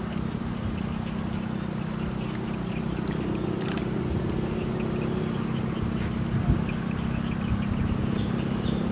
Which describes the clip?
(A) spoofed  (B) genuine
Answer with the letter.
B